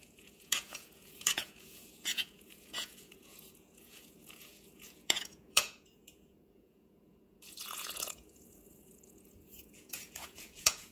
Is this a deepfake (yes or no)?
yes